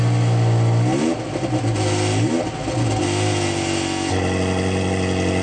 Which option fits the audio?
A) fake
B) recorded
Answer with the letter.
B